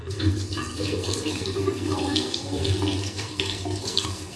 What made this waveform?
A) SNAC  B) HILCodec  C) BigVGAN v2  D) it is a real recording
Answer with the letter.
A